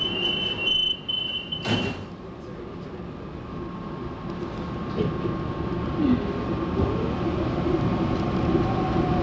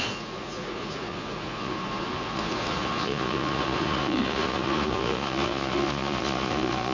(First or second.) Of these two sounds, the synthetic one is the second